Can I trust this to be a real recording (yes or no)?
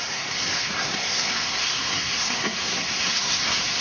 no